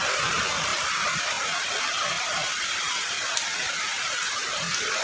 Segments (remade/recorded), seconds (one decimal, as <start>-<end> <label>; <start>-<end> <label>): 0.0-5.0 recorded